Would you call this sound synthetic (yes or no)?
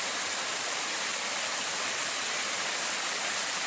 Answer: no